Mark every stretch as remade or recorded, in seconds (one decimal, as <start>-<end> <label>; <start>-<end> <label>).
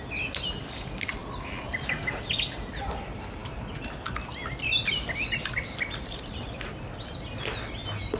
0.0-8.2 recorded